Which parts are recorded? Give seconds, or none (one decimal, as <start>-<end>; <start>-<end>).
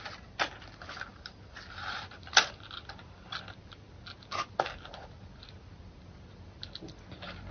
0.0-7.5